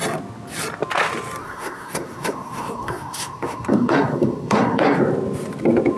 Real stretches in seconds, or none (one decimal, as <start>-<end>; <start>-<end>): 0.0-1.4; 5.0-6.0